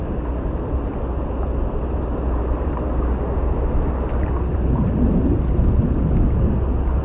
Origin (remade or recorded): recorded